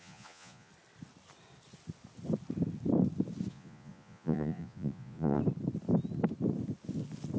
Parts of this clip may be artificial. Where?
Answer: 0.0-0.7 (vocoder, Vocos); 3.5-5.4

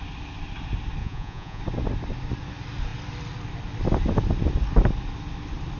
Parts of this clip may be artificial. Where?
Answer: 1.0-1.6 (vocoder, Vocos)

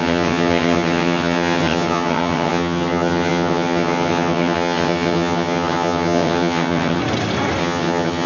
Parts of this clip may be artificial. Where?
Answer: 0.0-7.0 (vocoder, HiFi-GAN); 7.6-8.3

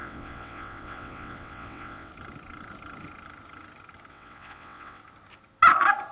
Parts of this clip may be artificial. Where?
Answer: 0.0-2.1 (vocoder, WaveNeXt); 4.1-5.0

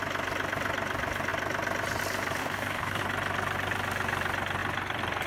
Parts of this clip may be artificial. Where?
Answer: 2.4-3.0 (codec, DAC)

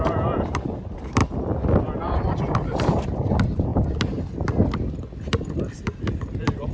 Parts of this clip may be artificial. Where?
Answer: 0.0-1.2 (vocoder, BigVGAN v2); 1.8-3.7; 5.5-6.7

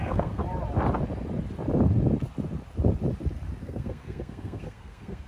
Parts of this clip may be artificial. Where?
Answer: 0.0-0.4 (codec, SNAC); 3.6-5.3

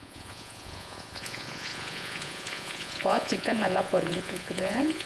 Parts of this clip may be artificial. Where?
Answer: 0.0-5.1 (vocoder, Vocos)